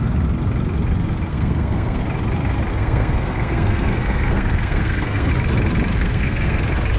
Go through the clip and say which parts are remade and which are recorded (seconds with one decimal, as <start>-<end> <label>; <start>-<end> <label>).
0.0-1.3 recorded; 1.3-2.0 remade; 2.0-2.7 recorded; 2.7-5.3 remade; 5.3-5.9 recorded; 5.9-6.6 remade; 6.6-7.0 recorded